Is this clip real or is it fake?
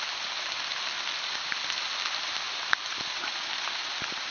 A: real